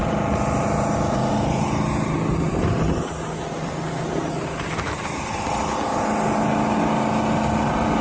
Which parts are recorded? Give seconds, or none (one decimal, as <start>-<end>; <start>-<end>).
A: 0.0-8.0